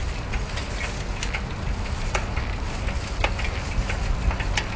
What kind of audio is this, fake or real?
real